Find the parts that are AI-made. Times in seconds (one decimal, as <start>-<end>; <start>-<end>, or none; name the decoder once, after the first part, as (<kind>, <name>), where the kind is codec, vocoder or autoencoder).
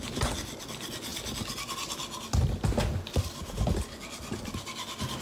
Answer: none